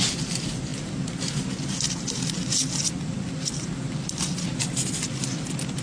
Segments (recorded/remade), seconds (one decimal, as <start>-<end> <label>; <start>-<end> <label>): 0.0-5.8 recorded